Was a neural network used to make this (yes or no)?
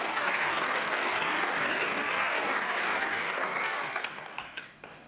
yes